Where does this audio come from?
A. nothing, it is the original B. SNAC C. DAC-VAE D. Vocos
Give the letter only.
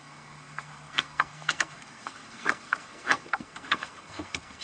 B